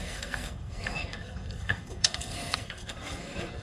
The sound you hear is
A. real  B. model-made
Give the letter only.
B